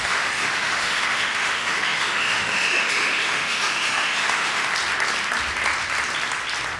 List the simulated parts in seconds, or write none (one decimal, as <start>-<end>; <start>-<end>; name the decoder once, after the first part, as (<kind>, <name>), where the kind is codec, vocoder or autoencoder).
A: 0.0-4.7 (autoencoder, DAC-VAE)